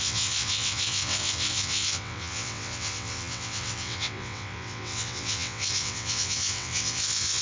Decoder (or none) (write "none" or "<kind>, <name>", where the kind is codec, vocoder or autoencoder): vocoder, WaveNeXt